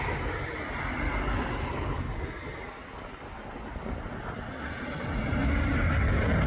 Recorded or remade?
recorded